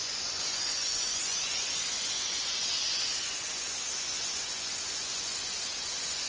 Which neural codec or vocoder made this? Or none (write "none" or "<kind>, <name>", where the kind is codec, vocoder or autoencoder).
vocoder, Vocos